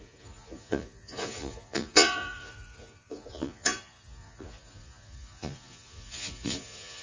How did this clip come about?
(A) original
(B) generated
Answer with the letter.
B